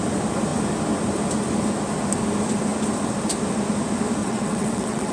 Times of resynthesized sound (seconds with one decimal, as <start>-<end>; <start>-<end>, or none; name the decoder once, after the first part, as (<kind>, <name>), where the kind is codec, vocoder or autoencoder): 4.2-5.1 (vocoder, WaveNeXt)